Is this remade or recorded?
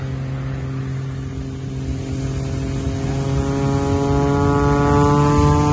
recorded